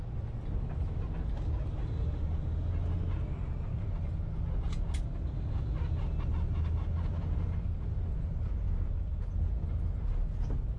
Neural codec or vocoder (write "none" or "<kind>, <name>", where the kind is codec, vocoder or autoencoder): none